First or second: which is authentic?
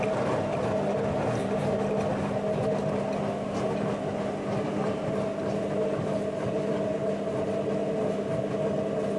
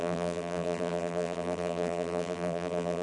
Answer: first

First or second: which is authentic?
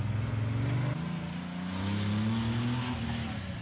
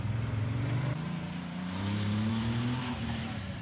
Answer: first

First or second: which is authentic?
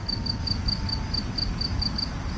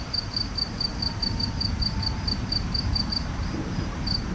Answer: first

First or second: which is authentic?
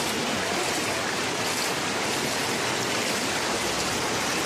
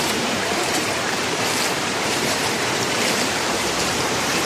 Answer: first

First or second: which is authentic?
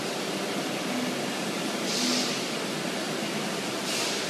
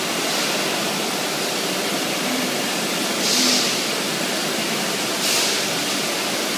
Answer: first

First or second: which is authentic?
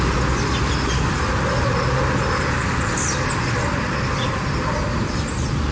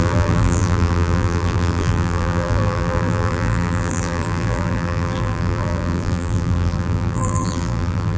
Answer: first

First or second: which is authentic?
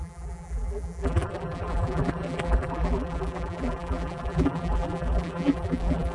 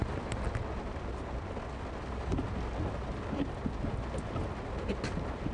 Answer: second